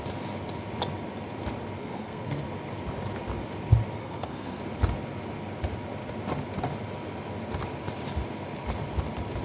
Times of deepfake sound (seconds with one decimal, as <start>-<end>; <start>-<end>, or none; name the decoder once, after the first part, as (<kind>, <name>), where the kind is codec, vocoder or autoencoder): 1.8-2.4 (codec, SNAC); 4.0-4.6